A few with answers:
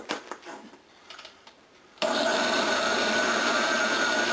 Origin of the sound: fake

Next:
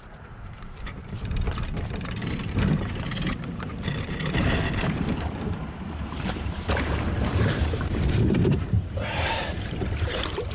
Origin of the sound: fake